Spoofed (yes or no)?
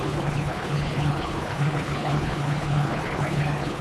yes